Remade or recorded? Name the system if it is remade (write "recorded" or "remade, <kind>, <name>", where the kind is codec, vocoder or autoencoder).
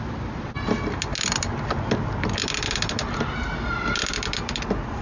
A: recorded